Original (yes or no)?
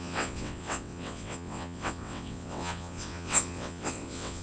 no